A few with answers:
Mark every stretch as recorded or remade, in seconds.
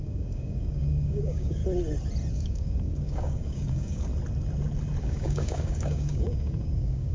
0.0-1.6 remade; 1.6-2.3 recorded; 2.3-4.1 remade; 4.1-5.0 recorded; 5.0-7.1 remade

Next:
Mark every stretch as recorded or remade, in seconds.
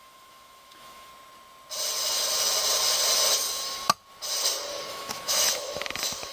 0.0-1.1 remade; 1.1-4.9 recorded; 4.9-6.3 remade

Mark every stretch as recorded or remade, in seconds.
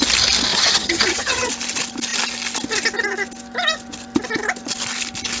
0.0-0.5 recorded; 0.5-1.5 remade; 1.5-5.4 recorded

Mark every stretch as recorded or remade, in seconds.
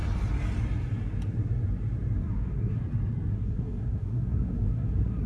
0.0-2.2 recorded; 2.2-2.8 remade; 2.8-3.3 recorded; 3.3-5.3 remade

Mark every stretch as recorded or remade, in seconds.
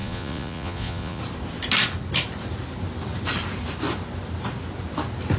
0.0-1.2 remade; 1.2-5.4 recorded